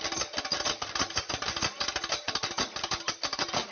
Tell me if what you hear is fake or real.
real